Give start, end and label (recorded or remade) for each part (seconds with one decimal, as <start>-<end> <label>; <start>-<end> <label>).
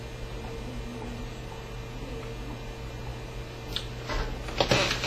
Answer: 0.0-0.9 recorded; 0.9-1.5 remade; 1.5-5.1 recorded